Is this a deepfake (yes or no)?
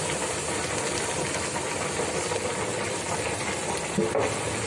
no